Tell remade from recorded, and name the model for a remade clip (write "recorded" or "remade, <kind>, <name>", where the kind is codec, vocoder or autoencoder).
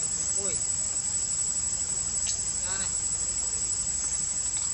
recorded